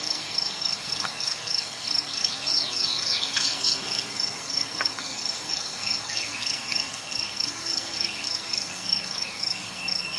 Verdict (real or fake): fake